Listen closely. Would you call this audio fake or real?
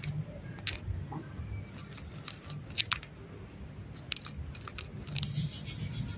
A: real